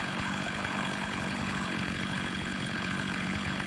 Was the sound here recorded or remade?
remade